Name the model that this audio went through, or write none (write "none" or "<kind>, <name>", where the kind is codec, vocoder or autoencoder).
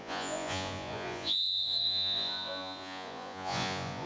vocoder, Vocos